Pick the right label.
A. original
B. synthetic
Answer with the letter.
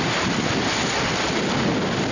A